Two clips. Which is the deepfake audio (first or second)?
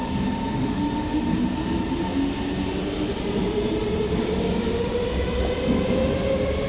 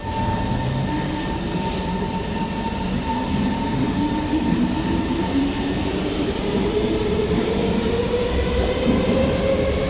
second